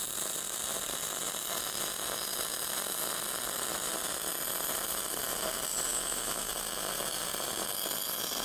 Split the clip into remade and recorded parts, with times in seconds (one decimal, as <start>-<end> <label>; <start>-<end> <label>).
0.0-5.9 recorded; 5.9-6.5 remade; 6.5-8.4 recorded